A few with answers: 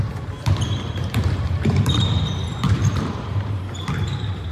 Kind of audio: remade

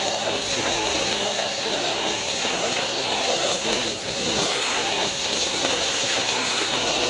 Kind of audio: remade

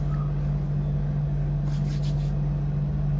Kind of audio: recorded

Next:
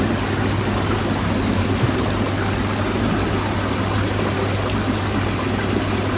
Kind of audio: recorded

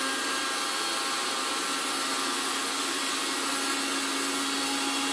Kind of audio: recorded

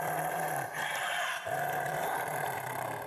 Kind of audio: remade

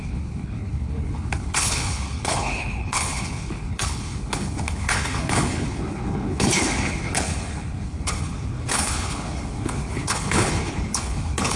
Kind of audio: remade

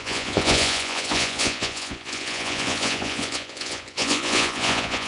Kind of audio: remade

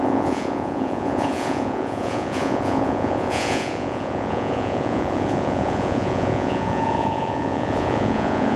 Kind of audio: remade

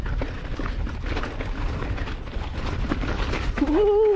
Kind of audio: recorded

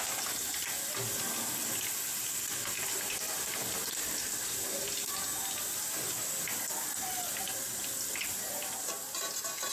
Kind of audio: recorded